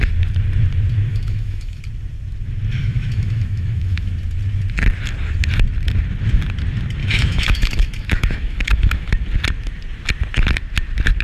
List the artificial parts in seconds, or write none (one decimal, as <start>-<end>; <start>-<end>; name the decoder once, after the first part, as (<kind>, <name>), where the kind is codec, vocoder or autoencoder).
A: 1.1-1.8 (autoencoder, DAC-VAE); 2.8-4.1; 7.0-9.1